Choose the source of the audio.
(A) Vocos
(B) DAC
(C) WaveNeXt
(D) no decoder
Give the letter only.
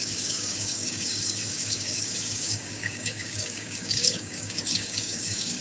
B